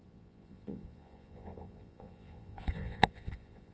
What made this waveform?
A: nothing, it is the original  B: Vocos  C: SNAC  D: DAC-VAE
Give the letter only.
B